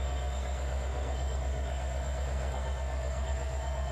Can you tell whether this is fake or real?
fake